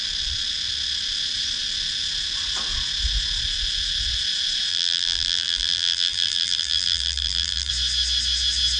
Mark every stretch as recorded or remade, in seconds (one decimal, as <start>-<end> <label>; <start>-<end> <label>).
0.0-4.7 recorded; 4.7-7.7 remade; 7.7-8.8 recorded